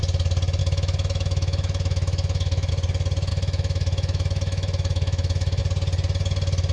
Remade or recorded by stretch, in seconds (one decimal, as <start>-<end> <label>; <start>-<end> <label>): 0.0-0.6 recorded; 0.6-2.7 remade; 2.7-3.3 recorded; 3.3-5.6 remade; 5.6-6.7 recorded